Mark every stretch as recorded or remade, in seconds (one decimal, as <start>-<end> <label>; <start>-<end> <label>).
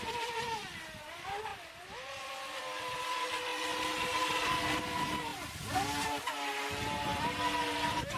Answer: 0.0-8.2 recorded